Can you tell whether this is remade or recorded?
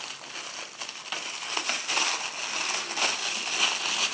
recorded